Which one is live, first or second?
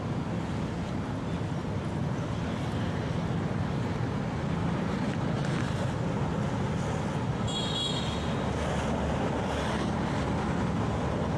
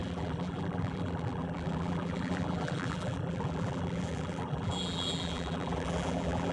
first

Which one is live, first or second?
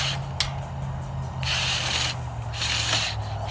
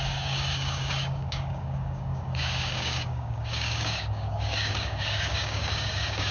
first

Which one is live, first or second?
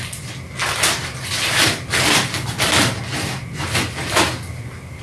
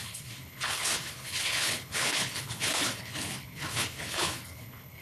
first